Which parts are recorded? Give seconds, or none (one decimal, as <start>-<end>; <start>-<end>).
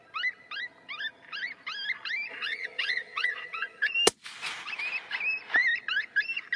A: 0.0-2.3; 3.9-6.6